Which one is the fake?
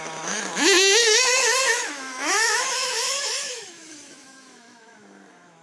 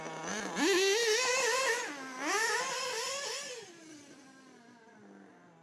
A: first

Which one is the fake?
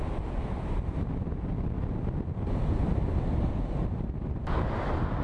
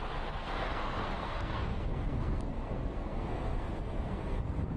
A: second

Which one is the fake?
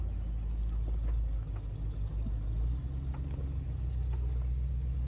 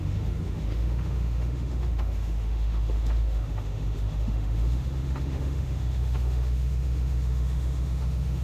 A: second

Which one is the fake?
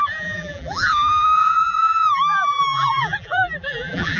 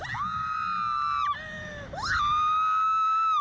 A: first